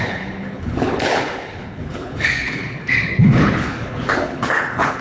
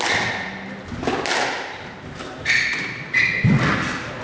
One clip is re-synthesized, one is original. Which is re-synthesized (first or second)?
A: first